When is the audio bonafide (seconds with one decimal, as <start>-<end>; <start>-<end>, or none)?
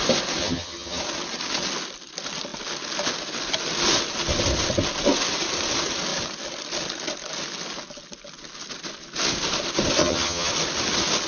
0.0-0.4; 1.0-10.0; 10.5-11.3